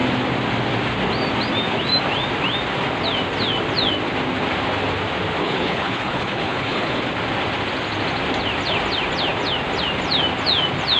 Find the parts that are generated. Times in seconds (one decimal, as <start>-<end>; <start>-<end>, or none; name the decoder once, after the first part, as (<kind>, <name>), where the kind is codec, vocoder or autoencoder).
5.4-7.0 (codec, HILCodec)